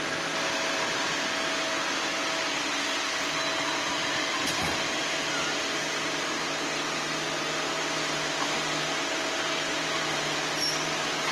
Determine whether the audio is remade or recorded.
recorded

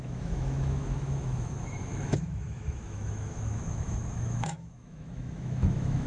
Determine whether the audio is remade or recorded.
remade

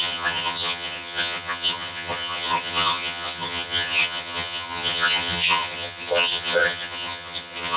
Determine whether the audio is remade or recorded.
remade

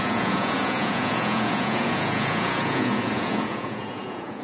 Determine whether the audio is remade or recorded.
remade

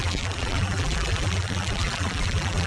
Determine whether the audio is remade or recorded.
remade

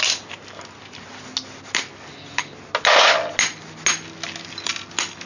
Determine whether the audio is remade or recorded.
recorded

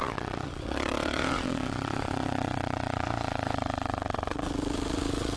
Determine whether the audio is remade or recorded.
remade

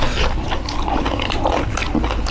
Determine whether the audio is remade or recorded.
recorded